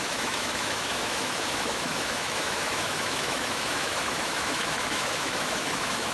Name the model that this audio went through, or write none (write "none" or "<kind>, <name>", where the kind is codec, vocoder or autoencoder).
autoencoder, DAC-VAE